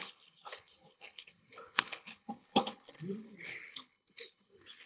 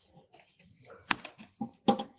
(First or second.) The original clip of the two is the second